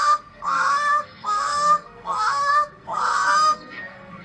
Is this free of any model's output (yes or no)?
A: no